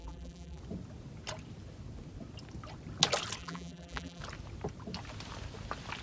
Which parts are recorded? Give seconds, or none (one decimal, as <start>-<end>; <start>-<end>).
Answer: 0.6-3.4; 4.2-6.0